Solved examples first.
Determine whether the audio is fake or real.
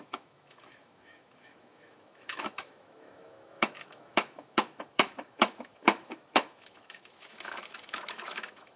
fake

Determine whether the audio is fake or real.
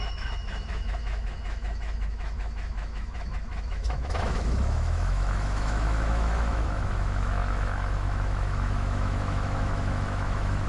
fake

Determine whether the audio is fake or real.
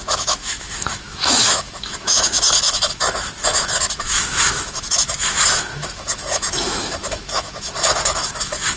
fake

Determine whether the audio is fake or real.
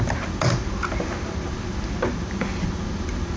real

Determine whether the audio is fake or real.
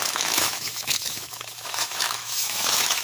fake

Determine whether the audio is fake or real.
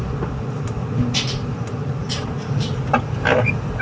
real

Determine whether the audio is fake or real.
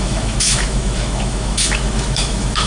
fake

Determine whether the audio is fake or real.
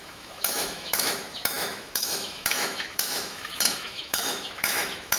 fake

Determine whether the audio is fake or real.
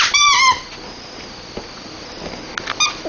real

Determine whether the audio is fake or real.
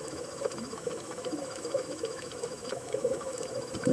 fake